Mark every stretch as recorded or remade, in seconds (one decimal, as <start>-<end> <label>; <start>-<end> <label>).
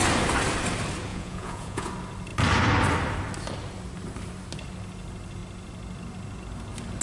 0.0-1.1 recorded; 1.1-1.9 remade; 1.9-7.0 recorded